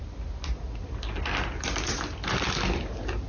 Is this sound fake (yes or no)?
no